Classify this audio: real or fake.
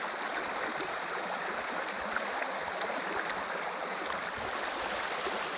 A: real